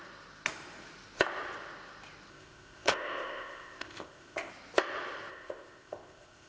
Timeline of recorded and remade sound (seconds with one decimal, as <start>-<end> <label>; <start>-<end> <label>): 0.0-2.3 recorded; 2.3-4.5 remade; 4.5-5.3 recorded; 5.3-6.5 remade

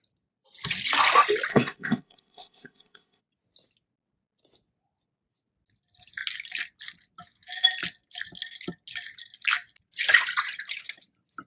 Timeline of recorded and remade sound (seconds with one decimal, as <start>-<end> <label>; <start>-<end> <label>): 0.0-1.5 recorded; 1.5-3.2 remade; 3.2-11.5 recorded